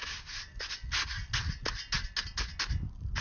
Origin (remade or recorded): recorded